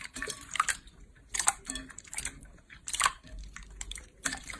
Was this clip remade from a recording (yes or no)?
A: yes